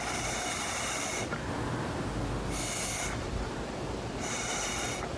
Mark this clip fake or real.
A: real